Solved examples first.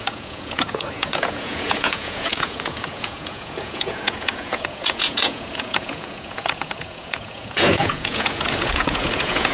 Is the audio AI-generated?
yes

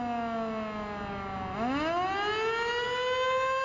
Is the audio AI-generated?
no